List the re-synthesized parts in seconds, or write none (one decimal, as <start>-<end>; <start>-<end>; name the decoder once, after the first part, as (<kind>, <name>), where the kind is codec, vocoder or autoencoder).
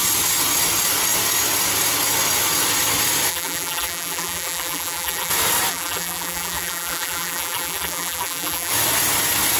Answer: 3.3-5.3 (vocoder, BigVGAN v2); 5.7-8.7